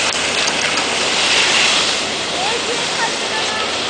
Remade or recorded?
recorded